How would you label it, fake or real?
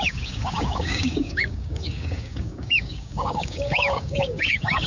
fake